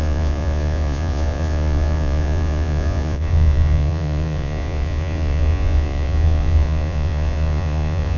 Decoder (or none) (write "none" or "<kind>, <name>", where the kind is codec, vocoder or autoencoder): vocoder, Vocos